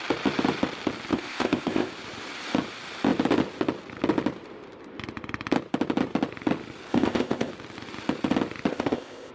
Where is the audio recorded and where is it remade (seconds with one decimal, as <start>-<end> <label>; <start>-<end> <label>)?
0.0-1.1 recorded; 1.1-1.9 remade; 1.9-6.9 recorded; 6.9-7.5 remade; 7.5-8.7 recorded; 8.7-9.3 remade